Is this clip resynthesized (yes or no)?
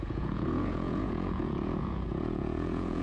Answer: yes